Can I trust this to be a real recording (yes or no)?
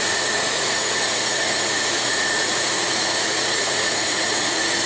no